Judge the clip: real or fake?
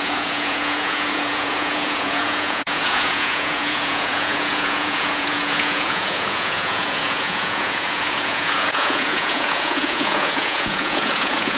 fake